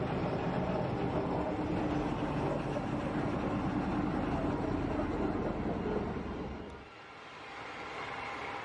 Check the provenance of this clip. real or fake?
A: real